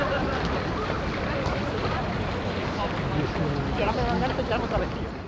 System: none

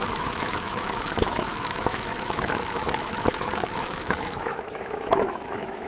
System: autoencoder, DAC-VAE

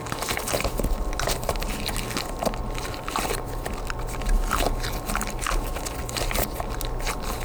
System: none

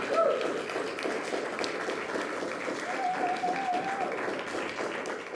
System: none